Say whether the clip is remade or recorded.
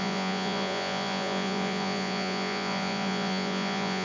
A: remade